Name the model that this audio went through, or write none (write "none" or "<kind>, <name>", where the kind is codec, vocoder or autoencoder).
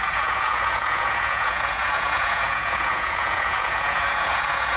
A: vocoder, Vocos